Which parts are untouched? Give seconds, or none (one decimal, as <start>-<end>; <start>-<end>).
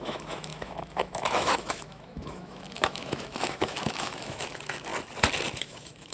4.9-5.6